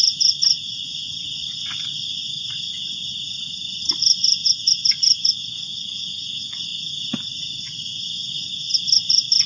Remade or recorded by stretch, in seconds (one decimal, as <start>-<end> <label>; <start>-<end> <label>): 0.0-2.2 remade; 2.2-3.9 recorded; 3.9-6.7 remade; 6.7-7.3 recorded; 7.3-9.5 remade